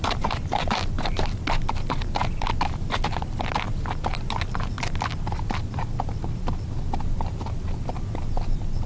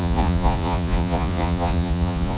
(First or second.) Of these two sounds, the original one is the first